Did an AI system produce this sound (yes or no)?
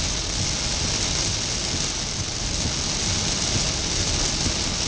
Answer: no